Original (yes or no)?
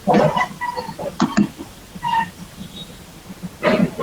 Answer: yes